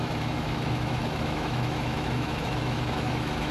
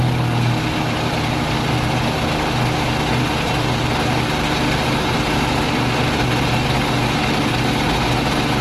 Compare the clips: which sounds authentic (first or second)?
second